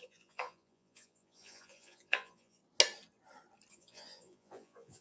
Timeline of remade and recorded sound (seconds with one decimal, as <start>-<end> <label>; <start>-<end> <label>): 0.0-2.6 remade; 2.6-3.7 recorded; 3.7-5.0 remade